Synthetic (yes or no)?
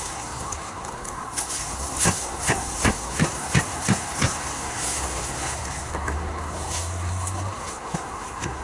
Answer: yes